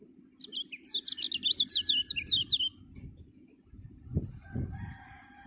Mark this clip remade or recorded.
recorded